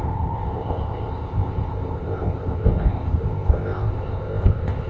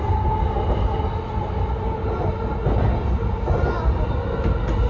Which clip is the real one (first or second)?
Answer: second